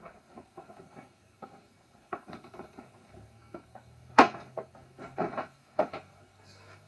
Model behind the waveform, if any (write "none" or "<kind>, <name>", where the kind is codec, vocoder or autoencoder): codec, SNAC